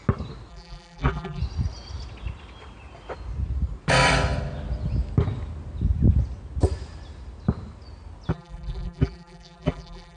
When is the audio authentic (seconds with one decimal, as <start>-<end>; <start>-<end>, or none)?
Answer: 0.0-0.5; 1.4-8.3